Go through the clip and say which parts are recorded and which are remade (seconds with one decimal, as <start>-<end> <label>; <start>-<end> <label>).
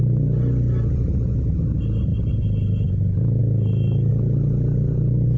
0.0-5.4 recorded